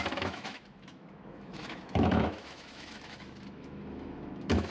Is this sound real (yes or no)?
no